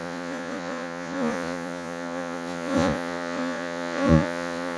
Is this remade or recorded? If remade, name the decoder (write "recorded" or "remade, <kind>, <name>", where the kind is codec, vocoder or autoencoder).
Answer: remade, vocoder, Vocos